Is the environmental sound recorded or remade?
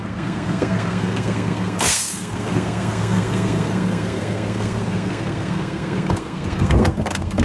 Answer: remade